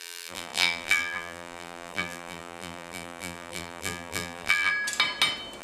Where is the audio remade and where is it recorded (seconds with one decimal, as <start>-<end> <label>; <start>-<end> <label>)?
0.0-4.7 remade; 4.7-5.6 recorded